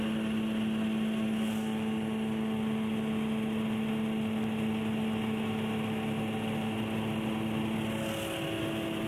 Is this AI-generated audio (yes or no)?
no